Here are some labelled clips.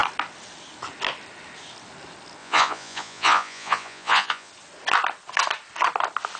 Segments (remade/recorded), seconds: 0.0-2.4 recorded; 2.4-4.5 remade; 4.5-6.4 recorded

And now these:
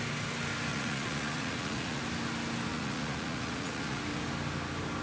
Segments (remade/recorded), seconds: 0.0-0.7 recorded; 0.7-2.0 remade; 2.0-2.7 recorded; 2.7-4.0 remade; 4.0-5.0 recorded

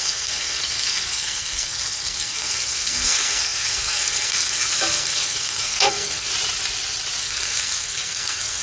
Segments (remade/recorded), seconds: 0.0-6.3 remade; 6.3-7.2 recorded; 7.2-8.6 remade

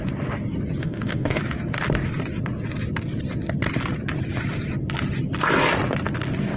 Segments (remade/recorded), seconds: 0.0-0.8 recorded; 0.8-1.4 remade; 1.4-6.6 recorded

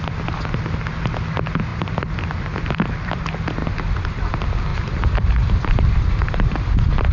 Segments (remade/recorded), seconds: 0.0-1.7 recorded; 1.7-3.2 remade; 3.2-4.7 recorded; 4.7-6.2 remade; 6.2-7.1 recorded

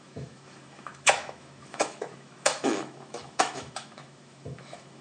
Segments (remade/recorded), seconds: 0.0-5.0 remade

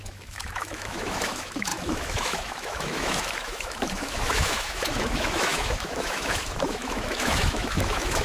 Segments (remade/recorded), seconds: 0.0-8.2 remade